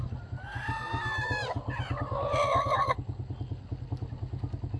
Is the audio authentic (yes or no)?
yes